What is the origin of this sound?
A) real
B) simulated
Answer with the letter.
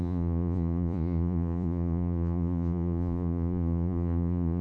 B